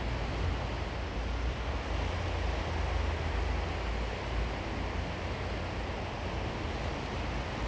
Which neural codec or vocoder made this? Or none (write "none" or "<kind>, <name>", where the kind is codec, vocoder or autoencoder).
none